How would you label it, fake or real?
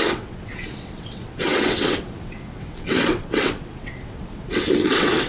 fake